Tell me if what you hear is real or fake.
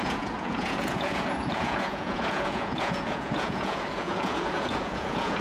fake